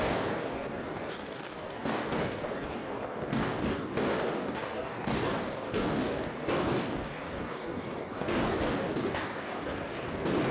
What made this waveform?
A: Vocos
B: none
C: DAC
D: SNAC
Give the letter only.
C